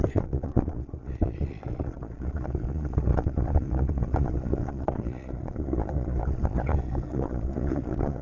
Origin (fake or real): fake